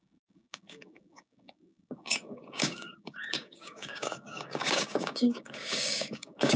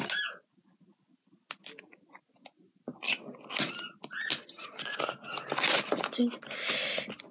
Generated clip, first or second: first